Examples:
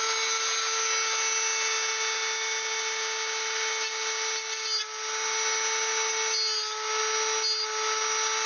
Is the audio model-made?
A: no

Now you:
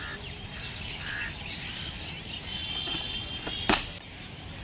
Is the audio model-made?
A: no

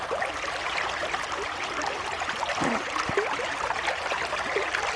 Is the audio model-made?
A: no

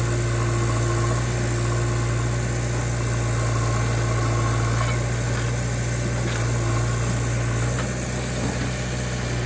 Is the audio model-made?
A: no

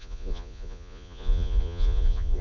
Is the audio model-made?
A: yes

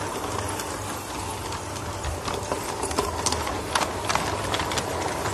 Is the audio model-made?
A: no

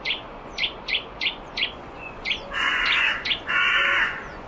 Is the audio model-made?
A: yes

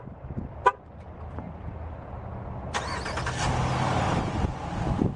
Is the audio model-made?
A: no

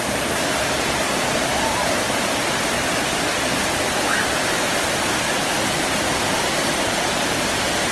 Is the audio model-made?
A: no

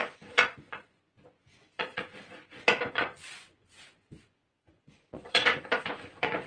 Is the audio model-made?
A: yes